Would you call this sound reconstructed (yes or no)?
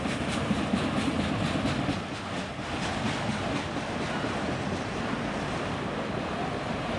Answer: no